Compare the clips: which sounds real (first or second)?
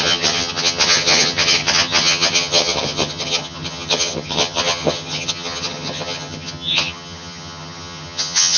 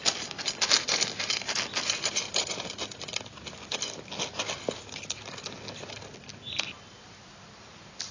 second